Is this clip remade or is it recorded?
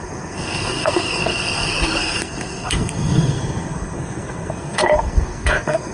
remade